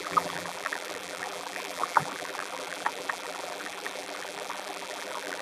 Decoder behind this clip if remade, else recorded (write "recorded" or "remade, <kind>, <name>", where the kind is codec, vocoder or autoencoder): remade, vocoder, BigVGAN v2